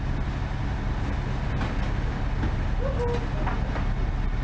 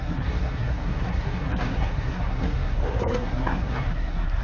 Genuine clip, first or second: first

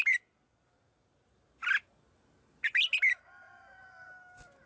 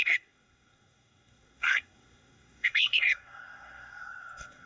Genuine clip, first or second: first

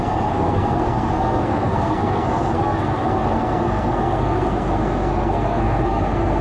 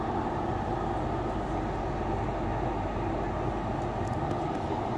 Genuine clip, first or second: second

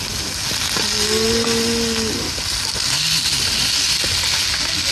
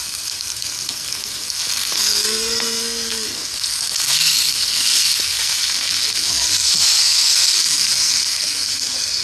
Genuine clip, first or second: first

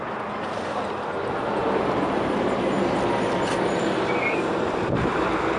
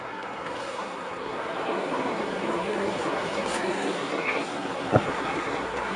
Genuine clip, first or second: first